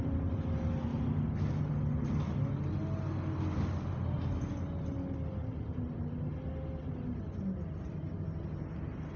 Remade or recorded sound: recorded